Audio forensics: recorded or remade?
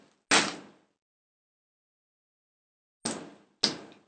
recorded